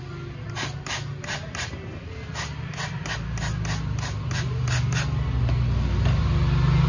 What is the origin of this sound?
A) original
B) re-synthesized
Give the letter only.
A